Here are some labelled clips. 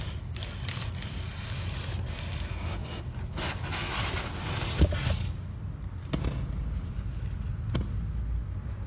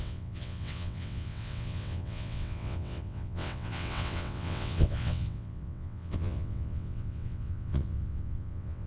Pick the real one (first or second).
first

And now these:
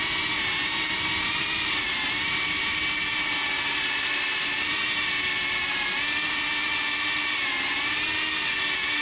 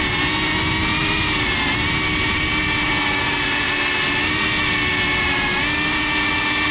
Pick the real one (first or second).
second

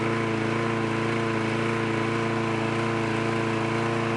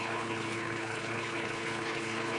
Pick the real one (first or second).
first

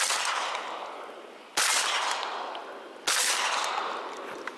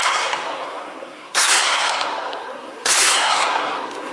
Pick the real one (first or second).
first